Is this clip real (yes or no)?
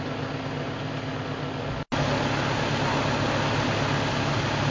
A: yes